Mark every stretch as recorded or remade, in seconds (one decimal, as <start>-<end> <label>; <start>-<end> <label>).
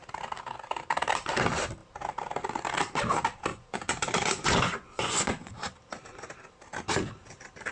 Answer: 0.0-3.5 recorded; 3.5-5.5 remade; 5.5-7.7 recorded